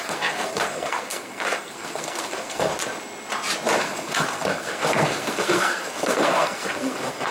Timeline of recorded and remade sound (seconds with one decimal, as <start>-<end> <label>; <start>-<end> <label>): 0.0-2.7 remade; 2.7-3.8 recorded; 3.8-7.3 remade